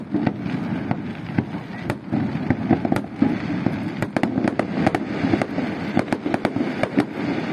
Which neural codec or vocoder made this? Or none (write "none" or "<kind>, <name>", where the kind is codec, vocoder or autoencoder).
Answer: none